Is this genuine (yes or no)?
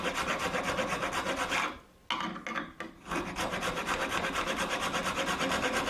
yes